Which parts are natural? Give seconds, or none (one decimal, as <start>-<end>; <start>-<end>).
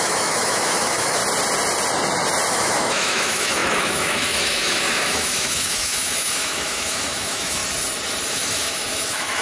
1.2-2.5; 7.6-8.3